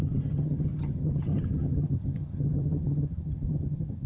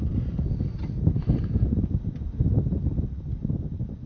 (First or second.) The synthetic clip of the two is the first